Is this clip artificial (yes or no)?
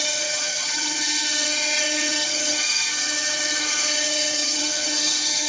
yes